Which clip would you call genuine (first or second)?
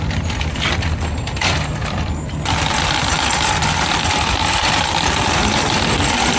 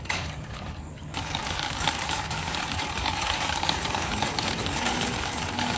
first